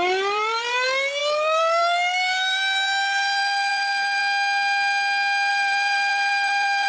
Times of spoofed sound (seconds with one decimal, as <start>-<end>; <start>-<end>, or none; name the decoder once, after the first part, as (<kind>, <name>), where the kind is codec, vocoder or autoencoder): 0.0-4.2 (vocoder, BigVGAN v2); 5.5-6.9